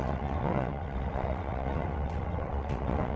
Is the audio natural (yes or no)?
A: no